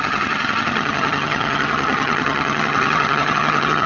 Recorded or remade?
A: remade